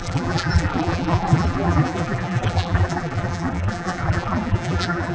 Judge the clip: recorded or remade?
remade